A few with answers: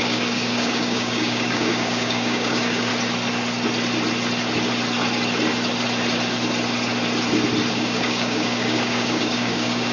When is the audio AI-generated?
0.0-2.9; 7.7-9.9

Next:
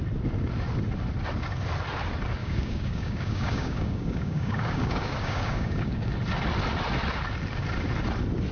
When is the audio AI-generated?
2.4-6.1

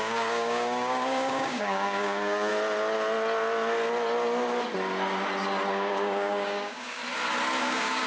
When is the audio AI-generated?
0.0-2.5; 5.7-7.0; 7.6-8.1

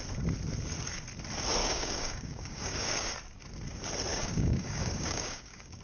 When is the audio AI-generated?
1.6-3.1; 4.1-5.8

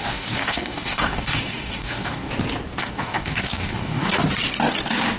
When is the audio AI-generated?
0.0-2.3; 2.8-4.1

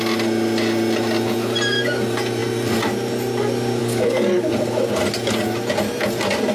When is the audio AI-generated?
3.8-4.5